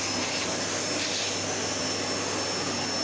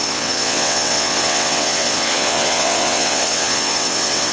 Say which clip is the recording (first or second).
first